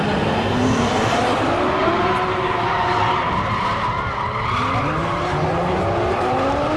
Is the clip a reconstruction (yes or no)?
no